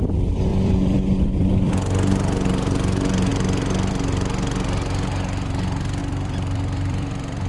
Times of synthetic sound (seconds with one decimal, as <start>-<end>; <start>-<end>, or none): 0.5-1.7; 6.0-7.5